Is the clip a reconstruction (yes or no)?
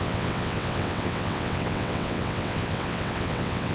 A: yes